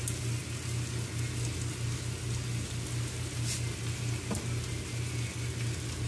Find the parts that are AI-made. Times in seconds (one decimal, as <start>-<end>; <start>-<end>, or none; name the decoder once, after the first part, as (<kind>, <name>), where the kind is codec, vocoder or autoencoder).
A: none